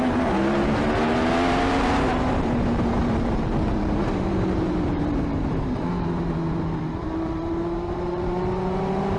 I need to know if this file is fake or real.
fake